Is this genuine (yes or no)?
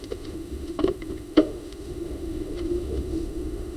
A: no